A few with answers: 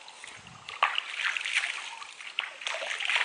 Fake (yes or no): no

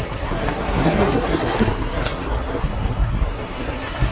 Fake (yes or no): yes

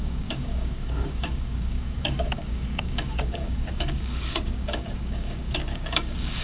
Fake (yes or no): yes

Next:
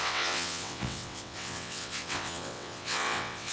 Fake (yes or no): yes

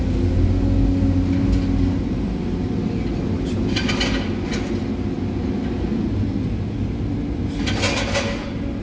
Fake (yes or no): no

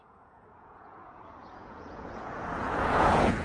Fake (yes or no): yes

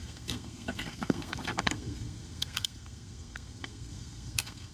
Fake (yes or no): yes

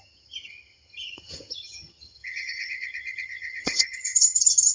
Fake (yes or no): yes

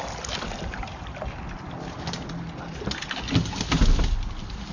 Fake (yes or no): no